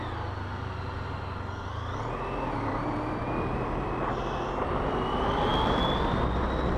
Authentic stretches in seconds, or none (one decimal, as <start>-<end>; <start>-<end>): 0.0-6.8